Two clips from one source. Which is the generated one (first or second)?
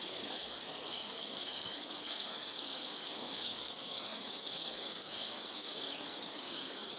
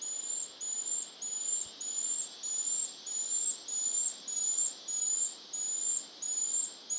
first